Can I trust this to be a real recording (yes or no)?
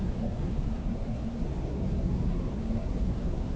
no